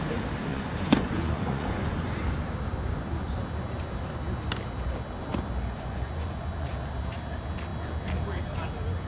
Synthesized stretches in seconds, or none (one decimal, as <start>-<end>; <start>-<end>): 0.5-2.2; 5.7-6.7